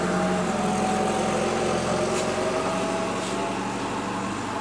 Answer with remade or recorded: recorded